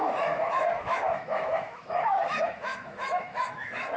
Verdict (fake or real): fake